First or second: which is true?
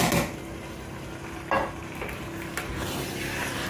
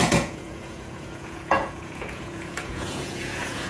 first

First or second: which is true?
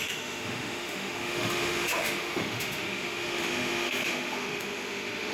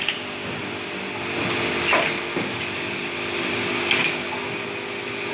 second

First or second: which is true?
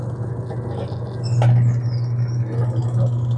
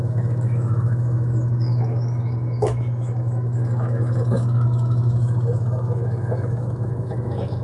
first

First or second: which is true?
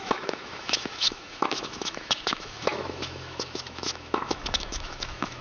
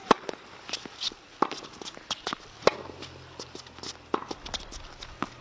second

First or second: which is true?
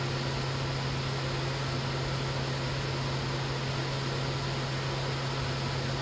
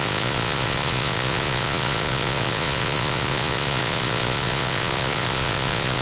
first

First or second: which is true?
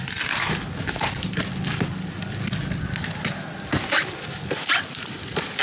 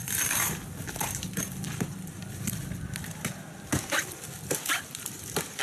first